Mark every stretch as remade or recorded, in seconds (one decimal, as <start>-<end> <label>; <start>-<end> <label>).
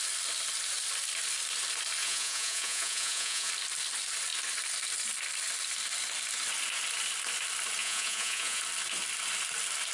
0.0-2.0 recorded; 2.0-3.5 remade; 3.5-7.8 recorded; 7.8-8.6 remade; 8.6-9.9 recorded